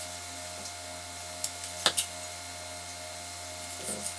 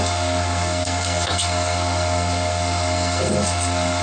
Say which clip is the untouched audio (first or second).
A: first